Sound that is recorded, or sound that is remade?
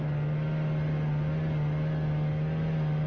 recorded